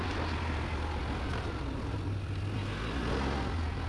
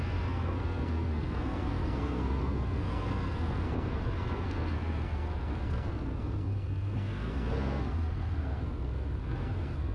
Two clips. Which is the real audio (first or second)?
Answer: first